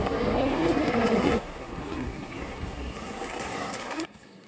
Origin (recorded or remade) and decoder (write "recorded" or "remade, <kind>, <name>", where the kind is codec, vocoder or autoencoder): remade, codec, SNAC